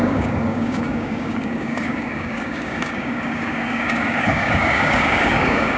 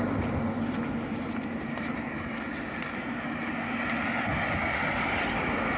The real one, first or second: second